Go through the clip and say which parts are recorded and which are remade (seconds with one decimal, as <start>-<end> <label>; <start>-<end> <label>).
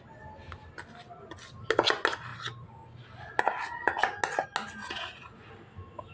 0.0-4.8 recorded; 4.8-5.5 remade; 5.5-6.1 recorded